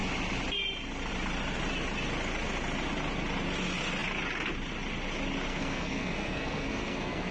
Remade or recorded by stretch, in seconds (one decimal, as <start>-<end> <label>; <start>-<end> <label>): 0.0-5.5 recorded; 5.5-7.3 remade